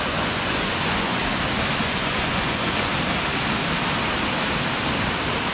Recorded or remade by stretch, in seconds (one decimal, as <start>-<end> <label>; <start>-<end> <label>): 0.0-1.2 remade; 1.2-1.8 recorded; 1.8-2.9 remade; 2.9-5.5 recorded

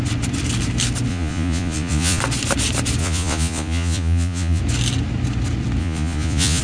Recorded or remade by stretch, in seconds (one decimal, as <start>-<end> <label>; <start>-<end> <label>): 0.0-1.1 recorded; 1.1-2.2 remade; 2.2-3.0 recorded; 3.0-4.6 remade; 4.6-5.8 recorded; 5.8-6.6 remade

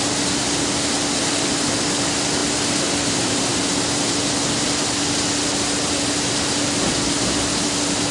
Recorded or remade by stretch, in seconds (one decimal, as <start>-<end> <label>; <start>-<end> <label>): 0.0-8.1 recorded

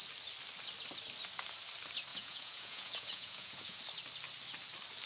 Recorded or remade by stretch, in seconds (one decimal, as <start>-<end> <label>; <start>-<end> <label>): 0.0-2.1 recorded; 2.1-3.8 remade; 3.8-5.1 recorded

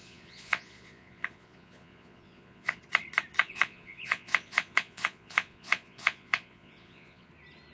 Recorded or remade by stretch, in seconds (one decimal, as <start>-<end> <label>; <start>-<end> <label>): 0.0-2.8 remade; 2.8-3.4 recorded; 3.4-7.3 remade; 7.3-7.7 recorded

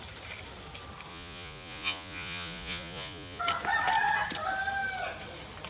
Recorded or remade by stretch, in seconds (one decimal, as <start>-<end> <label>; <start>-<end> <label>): 0.0-1.1 recorded; 1.1-3.4 remade; 3.4-5.7 recorded

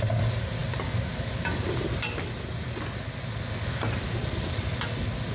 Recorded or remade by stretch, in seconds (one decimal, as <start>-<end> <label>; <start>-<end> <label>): 0.0-5.3 recorded

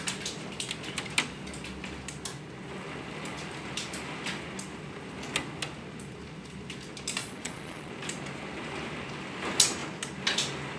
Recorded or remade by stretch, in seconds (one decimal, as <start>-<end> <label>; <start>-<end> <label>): 0.0-7.2 recorded; 7.2-7.9 remade; 7.9-10.8 recorded